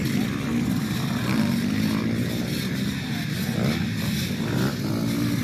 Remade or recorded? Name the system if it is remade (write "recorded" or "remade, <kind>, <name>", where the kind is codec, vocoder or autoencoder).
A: recorded